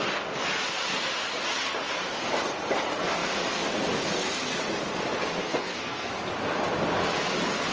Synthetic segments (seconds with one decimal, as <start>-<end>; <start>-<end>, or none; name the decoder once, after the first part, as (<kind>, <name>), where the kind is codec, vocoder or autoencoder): 5.4-6.1 (codec, SNAC)